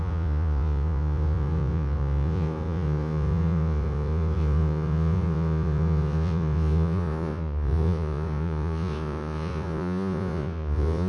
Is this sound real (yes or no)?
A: no